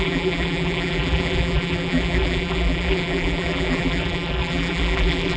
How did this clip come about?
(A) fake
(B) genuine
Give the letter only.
A